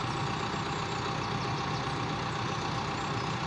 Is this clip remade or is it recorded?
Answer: recorded